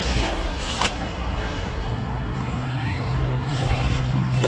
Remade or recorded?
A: remade